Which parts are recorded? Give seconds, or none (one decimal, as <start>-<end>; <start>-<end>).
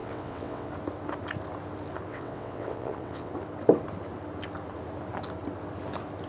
0.7-2.1; 3.3-6.3